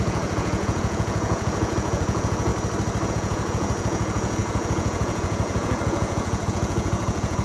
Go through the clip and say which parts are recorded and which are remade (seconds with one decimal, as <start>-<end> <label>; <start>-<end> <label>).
0.0-2.5 remade; 2.5-3.1 recorded; 3.1-7.4 remade